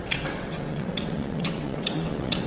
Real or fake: fake